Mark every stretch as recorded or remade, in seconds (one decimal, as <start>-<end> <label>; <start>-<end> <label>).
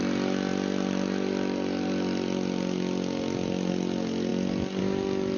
0.0-5.4 recorded